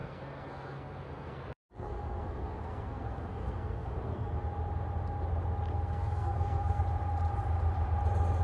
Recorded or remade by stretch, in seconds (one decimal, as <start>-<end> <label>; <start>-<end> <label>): 0.0-4.4 remade; 4.4-5.7 recorded; 5.7-6.8 remade; 6.8-8.4 recorded